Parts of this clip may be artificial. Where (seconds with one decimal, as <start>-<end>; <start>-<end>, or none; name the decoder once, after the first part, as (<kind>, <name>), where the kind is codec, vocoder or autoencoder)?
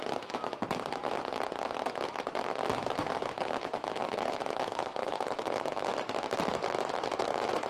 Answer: 0.0-0.5 (autoencoder, DAC-VAE); 3.1-5.9; 7.2-7.7